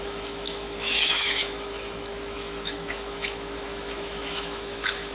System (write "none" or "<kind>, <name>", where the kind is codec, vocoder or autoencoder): autoencoder, DAC-VAE